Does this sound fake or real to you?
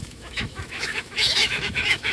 fake